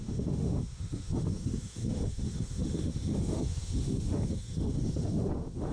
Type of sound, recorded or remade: remade